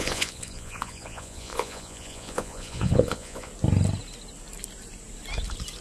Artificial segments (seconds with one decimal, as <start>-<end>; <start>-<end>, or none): 0.0-3.5